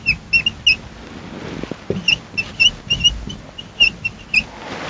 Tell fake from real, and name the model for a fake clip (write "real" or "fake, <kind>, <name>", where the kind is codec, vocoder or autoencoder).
real